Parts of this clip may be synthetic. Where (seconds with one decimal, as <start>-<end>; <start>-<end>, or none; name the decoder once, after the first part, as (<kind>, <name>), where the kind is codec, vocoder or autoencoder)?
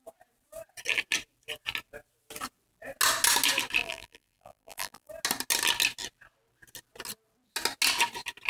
3.8-5.1 (vocoder, BigVGAN v2)